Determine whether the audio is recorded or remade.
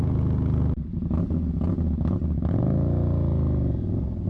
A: recorded